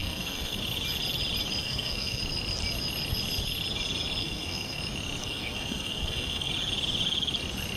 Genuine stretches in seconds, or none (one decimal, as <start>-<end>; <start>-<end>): 0.6-1.6; 2.2-4.2; 4.8-5.2; 6.5-7.8